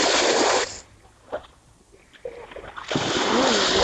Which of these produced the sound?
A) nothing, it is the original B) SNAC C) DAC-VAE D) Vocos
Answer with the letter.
A